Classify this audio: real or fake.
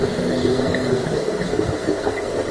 fake